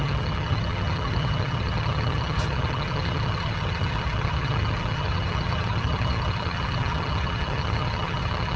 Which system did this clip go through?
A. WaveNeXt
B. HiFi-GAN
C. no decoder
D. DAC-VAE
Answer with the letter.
B